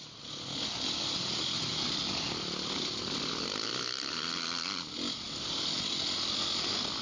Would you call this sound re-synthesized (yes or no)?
no